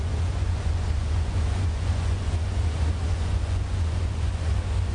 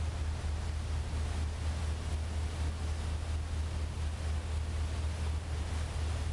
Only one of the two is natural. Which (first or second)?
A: second